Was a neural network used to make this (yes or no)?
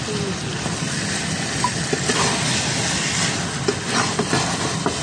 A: no